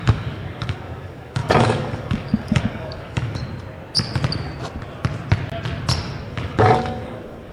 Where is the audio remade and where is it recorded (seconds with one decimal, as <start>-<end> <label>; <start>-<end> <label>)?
0.0-3.4 remade; 3.4-6.3 recorded; 6.3-7.5 remade